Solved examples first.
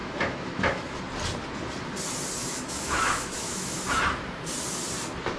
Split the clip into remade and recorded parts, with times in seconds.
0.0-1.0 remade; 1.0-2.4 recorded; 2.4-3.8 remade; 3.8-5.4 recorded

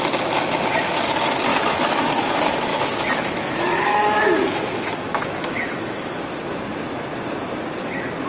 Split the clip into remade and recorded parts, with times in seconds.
0.0-1.5 recorded; 1.5-2.3 remade; 2.3-2.7 recorded; 2.7-6.2 remade; 6.2-8.3 recorded

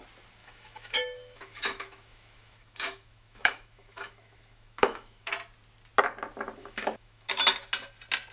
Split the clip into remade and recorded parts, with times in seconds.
0.0-0.4 recorded; 0.4-5.3 remade; 5.3-6.6 recorded; 6.6-7.3 remade; 7.3-8.3 recorded

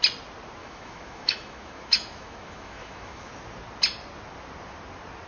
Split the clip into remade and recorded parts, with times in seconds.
0.0-0.6 recorded; 0.6-3.3 remade; 3.3-5.3 recorded

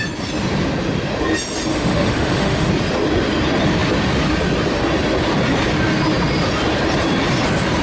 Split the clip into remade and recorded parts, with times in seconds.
0.0-1.7 recorded; 1.7-2.7 remade; 2.7-7.8 recorded